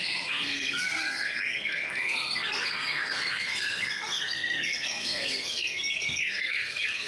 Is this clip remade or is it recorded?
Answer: remade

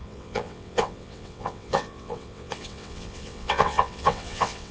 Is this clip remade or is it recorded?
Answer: remade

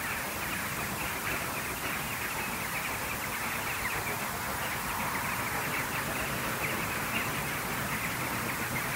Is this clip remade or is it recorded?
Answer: remade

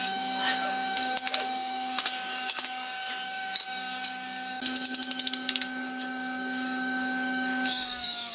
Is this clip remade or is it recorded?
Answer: remade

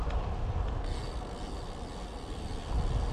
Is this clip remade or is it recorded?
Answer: recorded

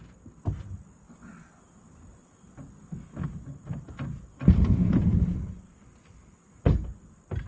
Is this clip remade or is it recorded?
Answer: recorded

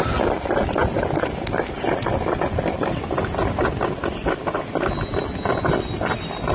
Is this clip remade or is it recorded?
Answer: recorded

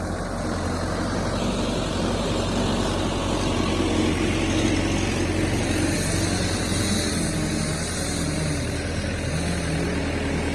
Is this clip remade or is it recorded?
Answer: recorded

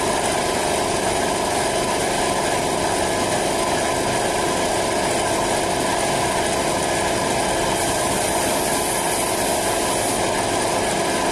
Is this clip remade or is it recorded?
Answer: recorded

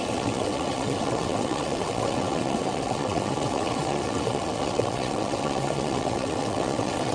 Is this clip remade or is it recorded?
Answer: remade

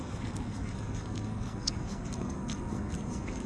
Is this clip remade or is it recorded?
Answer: remade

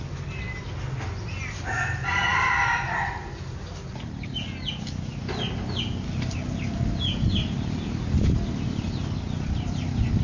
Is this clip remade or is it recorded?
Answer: recorded